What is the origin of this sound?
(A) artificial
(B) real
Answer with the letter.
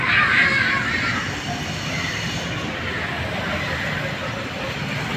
B